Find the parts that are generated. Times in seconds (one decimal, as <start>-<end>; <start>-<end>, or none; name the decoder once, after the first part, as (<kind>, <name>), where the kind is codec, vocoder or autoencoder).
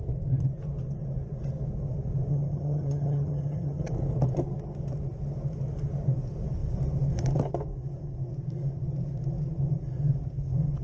2.3-3.9 (vocoder, HiFi-GAN)